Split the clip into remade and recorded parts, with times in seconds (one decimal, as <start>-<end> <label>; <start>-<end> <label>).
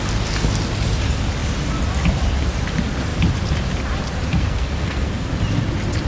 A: 0.0-4.3 recorded; 4.3-5.3 remade; 5.3-6.1 recorded